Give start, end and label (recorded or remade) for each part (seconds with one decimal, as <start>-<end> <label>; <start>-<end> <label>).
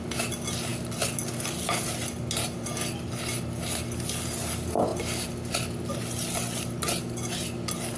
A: 0.0-8.0 recorded